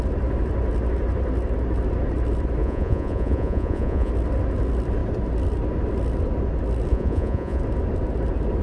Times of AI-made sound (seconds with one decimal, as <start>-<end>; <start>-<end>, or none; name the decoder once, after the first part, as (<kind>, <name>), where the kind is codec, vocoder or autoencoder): 2.6-4.1 (vocoder, Vocos); 6.9-7.6